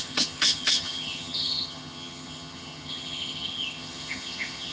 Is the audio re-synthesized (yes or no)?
yes